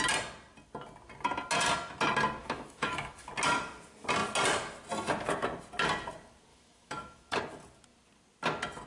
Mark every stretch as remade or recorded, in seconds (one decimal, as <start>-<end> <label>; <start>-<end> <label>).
0.0-2.4 recorded; 2.4-3.3 remade; 3.3-6.5 recorded; 6.5-7.4 remade; 7.4-8.9 recorded